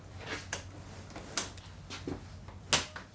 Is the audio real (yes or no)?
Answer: yes